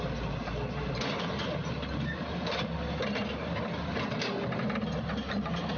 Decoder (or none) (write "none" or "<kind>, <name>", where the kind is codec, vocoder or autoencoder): none